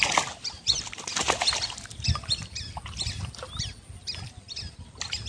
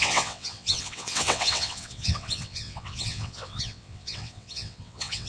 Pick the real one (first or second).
first